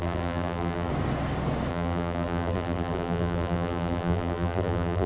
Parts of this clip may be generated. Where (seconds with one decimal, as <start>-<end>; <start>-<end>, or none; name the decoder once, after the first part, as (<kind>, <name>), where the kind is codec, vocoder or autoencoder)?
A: 0.0-0.9 (vocoder, BigVGAN v2); 1.7-5.1

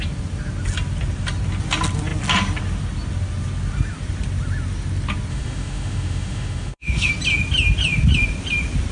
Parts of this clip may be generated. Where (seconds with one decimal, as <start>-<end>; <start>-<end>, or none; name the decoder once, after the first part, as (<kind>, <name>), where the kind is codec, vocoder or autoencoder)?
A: 5.3-7.1 (autoencoder, DAC-VAE)